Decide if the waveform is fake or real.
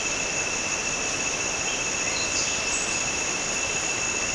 real